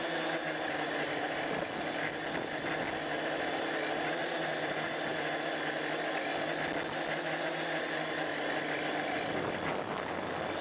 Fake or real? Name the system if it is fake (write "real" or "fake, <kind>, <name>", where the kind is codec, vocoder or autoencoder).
real